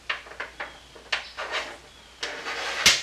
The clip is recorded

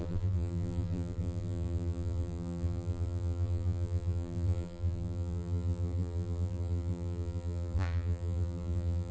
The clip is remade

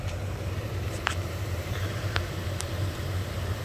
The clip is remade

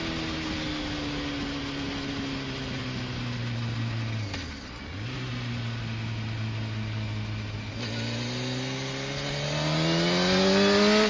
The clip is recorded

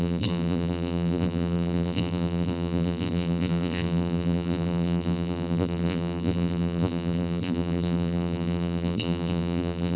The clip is remade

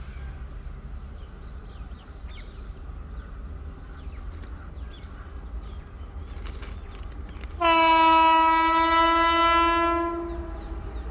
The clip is recorded